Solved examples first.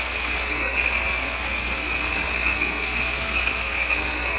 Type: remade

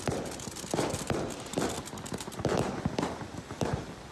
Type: recorded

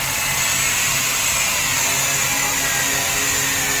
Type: recorded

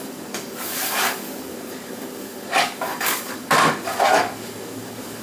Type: remade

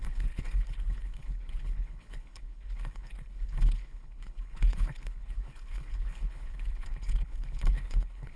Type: remade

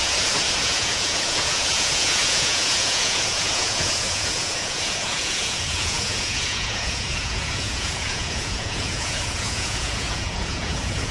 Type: remade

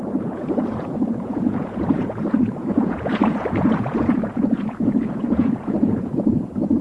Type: remade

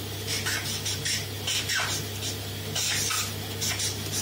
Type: recorded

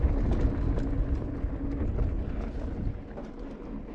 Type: recorded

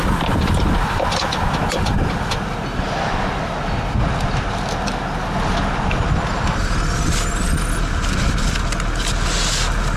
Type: recorded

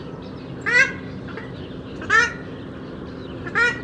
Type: recorded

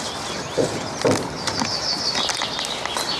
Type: recorded